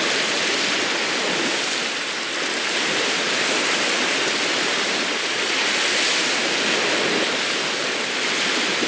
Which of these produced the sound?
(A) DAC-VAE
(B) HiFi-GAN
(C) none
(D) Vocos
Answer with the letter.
C